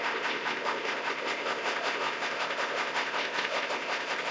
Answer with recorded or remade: remade